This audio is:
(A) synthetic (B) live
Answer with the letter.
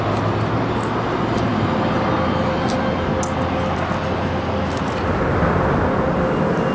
B